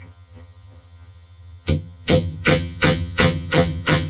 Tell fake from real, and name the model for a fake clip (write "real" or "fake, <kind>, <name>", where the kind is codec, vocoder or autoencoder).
fake, vocoder, HiFi-GAN